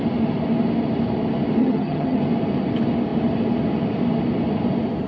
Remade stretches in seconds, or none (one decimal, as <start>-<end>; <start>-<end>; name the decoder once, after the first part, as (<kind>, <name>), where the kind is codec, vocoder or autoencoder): 1.6-2.2 (vocoder, HiFi-GAN)